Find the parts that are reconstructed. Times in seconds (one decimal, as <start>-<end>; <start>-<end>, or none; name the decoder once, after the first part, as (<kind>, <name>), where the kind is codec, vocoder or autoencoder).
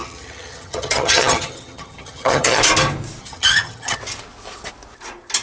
0.0-2.6 (vocoder, HiFi-GAN); 3.2-4.0